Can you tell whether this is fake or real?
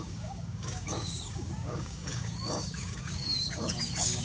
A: fake